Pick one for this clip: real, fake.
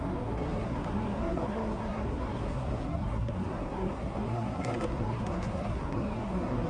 fake